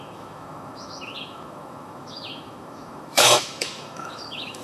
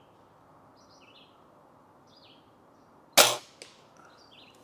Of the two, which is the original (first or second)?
second